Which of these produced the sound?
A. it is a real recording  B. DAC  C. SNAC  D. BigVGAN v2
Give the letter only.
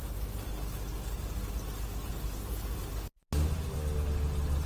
A